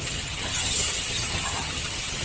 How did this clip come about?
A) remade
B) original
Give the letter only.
A